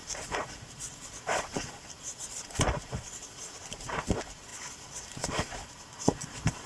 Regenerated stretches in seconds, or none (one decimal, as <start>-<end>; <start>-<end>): 0.0-6.7